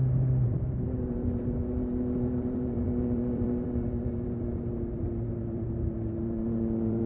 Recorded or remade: remade